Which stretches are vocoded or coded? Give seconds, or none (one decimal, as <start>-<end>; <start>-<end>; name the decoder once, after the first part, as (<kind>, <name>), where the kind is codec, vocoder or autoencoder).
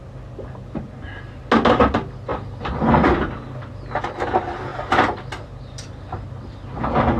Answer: none